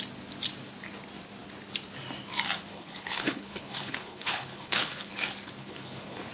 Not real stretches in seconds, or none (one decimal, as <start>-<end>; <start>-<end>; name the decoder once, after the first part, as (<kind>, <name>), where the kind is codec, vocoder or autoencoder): 2.7-5.1 (codec, HILCodec); 5.6-6.3